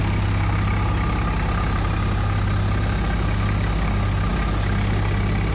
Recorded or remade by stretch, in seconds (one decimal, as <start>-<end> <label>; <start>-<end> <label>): 0.0-5.5 recorded